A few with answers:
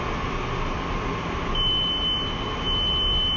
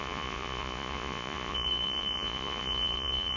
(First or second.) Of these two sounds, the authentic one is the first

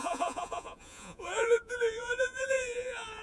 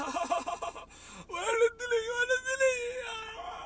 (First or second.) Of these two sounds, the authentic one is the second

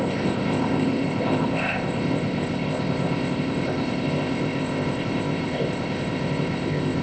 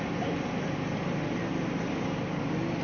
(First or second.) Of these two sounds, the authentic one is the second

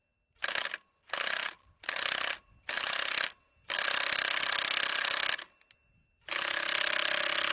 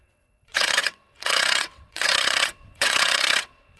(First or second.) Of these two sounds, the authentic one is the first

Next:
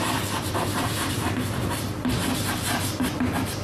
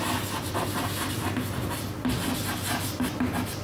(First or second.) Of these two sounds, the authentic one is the second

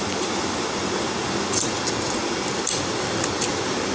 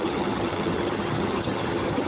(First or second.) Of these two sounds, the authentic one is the first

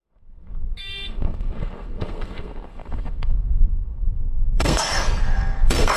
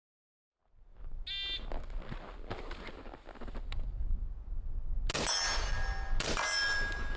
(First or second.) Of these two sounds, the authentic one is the second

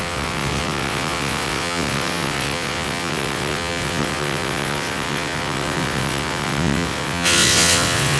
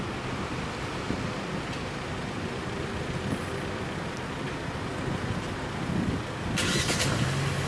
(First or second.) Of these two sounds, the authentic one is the second